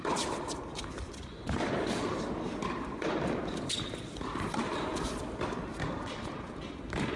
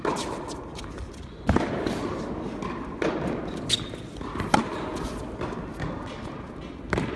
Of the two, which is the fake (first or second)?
first